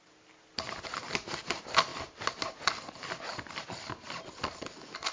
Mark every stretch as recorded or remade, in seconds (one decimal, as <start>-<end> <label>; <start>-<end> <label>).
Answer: 0.0-5.1 recorded